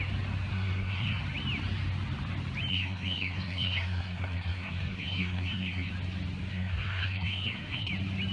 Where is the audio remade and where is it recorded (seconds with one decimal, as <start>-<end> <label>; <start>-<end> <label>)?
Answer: 0.0-0.5 recorded; 0.5-1.2 remade; 1.2-2.7 recorded; 2.7-5.9 remade; 5.9-6.5 recorded; 6.5-7.9 remade; 7.9-8.3 recorded